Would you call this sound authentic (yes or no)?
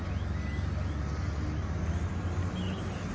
yes